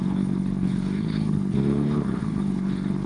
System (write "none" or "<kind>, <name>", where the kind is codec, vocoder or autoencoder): codec, HILCodec